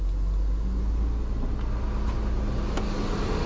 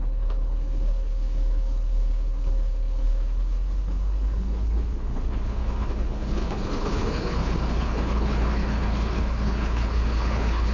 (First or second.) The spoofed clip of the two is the second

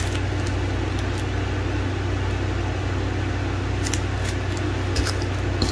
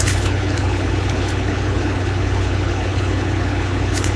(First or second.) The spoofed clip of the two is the second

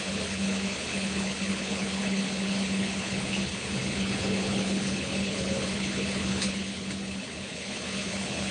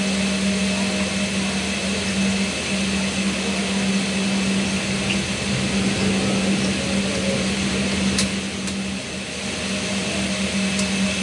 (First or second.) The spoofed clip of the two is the first